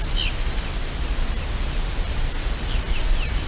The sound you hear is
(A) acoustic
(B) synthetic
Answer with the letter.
A